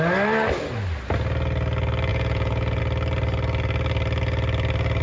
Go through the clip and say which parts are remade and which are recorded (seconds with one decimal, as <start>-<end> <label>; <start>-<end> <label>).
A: 0.0-2.1 recorded; 2.1-2.8 remade; 2.8-5.0 recorded